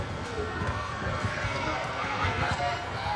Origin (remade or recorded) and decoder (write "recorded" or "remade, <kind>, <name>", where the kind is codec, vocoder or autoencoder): remade, codec, SNAC